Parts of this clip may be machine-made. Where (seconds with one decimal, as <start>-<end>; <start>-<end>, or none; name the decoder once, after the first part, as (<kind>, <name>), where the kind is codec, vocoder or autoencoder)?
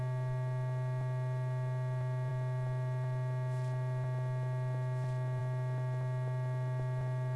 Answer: none